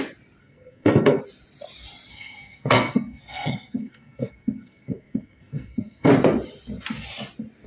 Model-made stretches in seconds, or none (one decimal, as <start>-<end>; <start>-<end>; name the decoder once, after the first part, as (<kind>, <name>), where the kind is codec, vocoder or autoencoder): 0.4-1.2 (codec, SNAC); 2.1-6.1